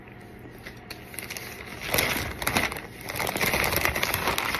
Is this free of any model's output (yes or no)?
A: yes